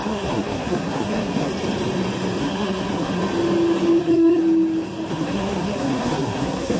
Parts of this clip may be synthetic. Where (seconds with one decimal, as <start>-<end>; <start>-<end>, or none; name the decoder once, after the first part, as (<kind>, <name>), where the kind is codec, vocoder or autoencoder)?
0.0-1.5 (codec, SNAC); 2.4-3.2; 4.0-4.4; 5.1-6.8

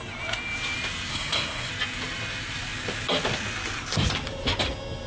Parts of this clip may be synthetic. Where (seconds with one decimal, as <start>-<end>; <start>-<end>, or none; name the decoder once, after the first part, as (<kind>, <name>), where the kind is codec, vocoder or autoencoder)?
1.1-1.7 (codec, SNAC)